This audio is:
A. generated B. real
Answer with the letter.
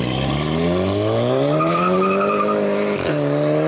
A